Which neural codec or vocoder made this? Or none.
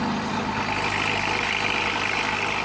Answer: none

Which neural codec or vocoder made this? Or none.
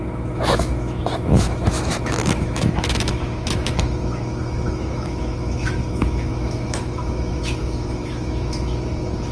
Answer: autoencoder, DAC-VAE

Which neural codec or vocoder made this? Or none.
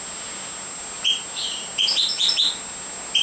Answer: none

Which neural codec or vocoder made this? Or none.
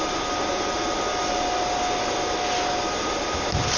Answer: none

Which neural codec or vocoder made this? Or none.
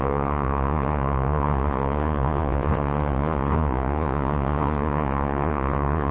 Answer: vocoder, Vocos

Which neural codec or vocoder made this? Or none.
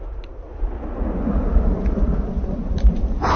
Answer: none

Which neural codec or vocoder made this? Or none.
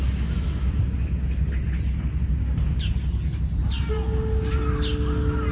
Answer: none